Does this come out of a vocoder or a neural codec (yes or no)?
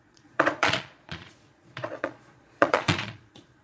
yes